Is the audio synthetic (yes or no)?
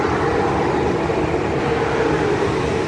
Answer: no